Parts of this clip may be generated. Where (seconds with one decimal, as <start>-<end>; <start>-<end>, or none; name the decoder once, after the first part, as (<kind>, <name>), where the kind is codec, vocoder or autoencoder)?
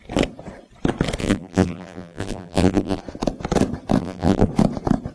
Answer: 1.2-3.0 (vocoder, BigVGAN v2); 4.0-4.5